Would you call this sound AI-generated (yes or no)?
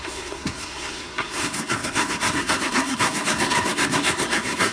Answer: yes